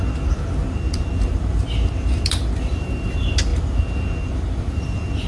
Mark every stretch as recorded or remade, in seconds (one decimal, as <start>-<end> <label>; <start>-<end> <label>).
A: 0.0-3.5 remade; 3.5-4.3 recorded; 4.3-5.3 remade